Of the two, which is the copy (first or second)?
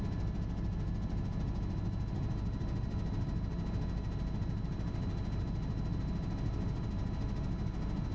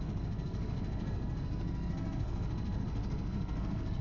second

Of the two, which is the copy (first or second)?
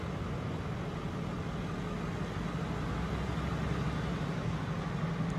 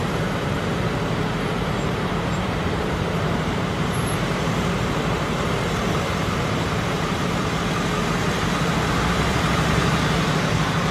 second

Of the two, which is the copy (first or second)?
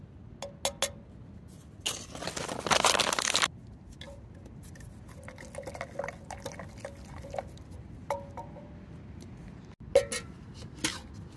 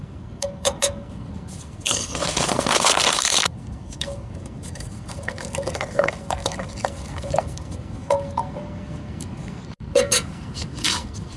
second